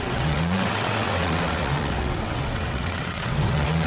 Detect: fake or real fake